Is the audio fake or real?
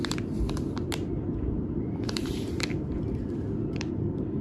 fake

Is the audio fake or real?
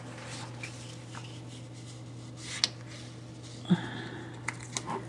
real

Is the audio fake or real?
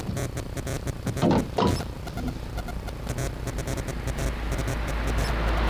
real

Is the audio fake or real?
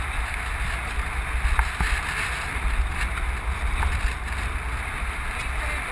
real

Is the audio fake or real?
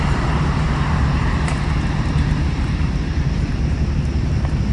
fake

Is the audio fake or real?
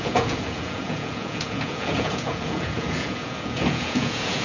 fake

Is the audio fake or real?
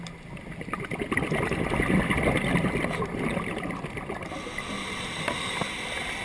real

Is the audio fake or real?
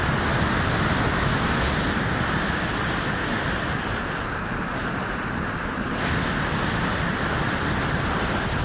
real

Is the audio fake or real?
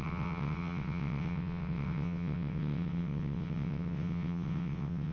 fake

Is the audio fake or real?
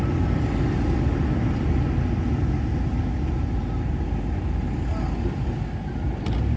real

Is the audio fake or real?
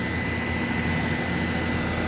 real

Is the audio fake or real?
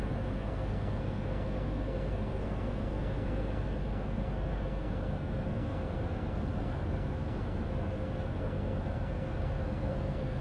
fake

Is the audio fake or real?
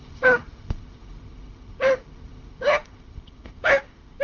fake